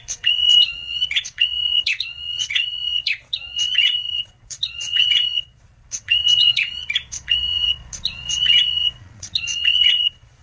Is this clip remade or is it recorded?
remade